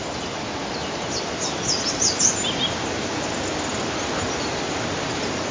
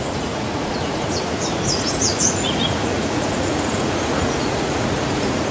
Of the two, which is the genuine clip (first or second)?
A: first